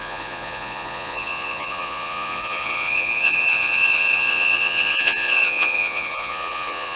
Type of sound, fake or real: fake